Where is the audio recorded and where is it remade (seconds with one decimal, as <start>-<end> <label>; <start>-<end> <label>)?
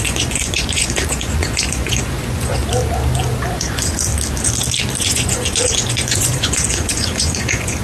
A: 0.0-2.6 remade; 2.6-3.5 recorded; 3.5-4.1 remade; 4.1-5.0 recorded; 5.0-7.8 remade